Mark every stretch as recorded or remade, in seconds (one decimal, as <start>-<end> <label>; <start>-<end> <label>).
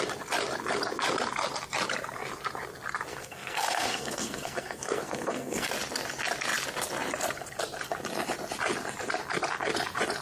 0.0-3.1 recorded; 3.1-5.7 remade; 5.7-10.2 recorded